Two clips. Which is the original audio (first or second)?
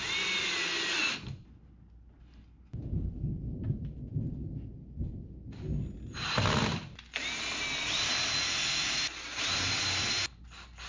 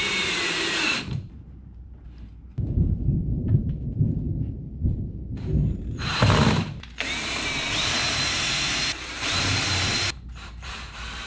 first